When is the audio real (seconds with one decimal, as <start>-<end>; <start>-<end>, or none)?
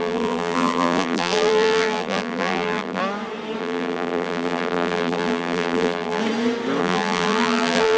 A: 3.0-3.6; 6.2-6.8